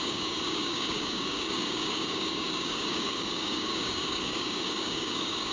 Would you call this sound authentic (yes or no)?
no